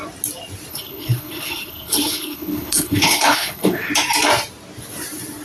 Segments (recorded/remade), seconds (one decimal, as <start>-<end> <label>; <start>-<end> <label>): 0.0-0.7 recorded; 0.7-3.9 remade; 3.9-5.4 recorded